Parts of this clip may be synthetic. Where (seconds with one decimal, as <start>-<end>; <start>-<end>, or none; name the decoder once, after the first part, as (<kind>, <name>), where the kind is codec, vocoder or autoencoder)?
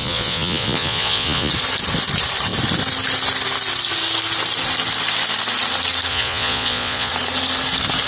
0.0-1.5 (vocoder, Vocos); 6.1-7.1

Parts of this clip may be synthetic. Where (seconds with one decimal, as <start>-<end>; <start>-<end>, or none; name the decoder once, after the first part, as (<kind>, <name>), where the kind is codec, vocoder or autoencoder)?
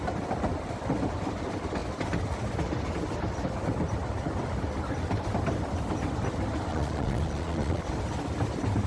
6.7-7.8 (vocoder, Vocos)